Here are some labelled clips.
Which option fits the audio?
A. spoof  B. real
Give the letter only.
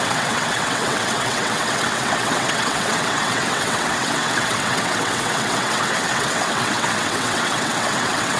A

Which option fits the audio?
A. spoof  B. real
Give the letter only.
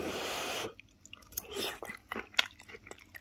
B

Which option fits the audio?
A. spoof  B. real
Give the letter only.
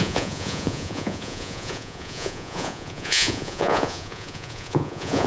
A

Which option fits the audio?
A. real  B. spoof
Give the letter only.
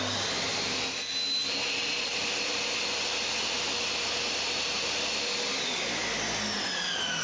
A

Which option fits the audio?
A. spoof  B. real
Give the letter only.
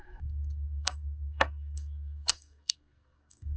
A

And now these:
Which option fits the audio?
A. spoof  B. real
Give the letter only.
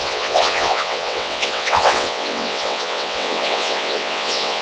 A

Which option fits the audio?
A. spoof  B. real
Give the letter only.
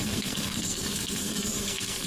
A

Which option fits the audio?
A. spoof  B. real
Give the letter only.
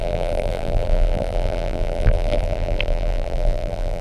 A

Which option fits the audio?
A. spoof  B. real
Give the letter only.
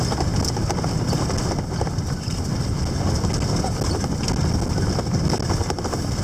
B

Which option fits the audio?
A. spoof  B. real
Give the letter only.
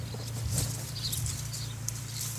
A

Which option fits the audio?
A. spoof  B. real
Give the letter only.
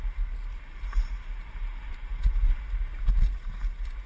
A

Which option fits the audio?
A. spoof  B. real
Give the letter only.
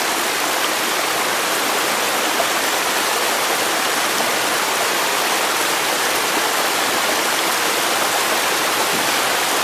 B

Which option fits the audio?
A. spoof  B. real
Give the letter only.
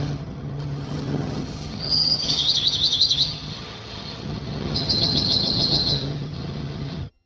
A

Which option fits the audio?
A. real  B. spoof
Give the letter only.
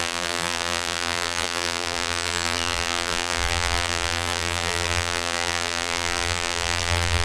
B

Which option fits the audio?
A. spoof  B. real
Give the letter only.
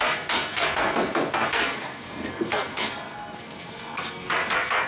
A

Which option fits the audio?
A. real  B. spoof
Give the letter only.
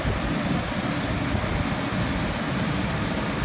A